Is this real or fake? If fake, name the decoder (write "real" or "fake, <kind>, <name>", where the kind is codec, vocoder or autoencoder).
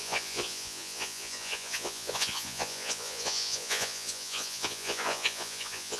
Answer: fake, vocoder, Vocos